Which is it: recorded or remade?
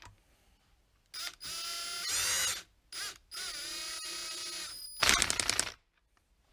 recorded